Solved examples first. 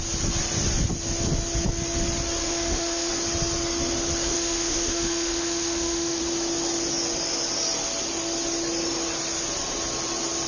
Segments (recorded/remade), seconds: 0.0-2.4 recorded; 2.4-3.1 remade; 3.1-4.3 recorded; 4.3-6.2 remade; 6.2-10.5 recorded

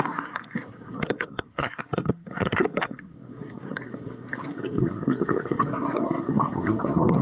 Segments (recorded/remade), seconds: 0.0-7.2 remade

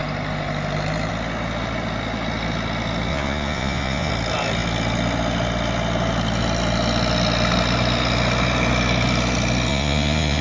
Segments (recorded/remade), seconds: 0.0-3.1 recorded; 3.1-4.1 remade; 4.1-9.7 recorded; 9.7-10.4 remade

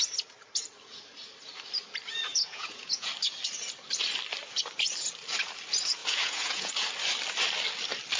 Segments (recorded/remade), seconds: 0.0-2.3 recorded; 2.3-3.1 remade; 3.1-6.0 recorded; 6.0-6.7 remade; 6.7-8.2 recorded

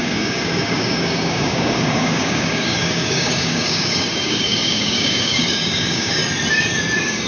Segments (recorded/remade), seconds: 0.0-6.2 remade; 6.2-7.3 recorded

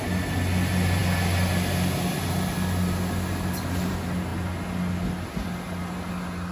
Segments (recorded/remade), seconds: 0.0-6.5 recorded